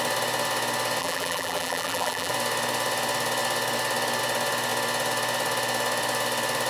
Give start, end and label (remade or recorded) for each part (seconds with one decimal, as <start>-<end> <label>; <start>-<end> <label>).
0.0-1.0 recorded; 1.0-2.3 remade; 2.3-6.7 recorded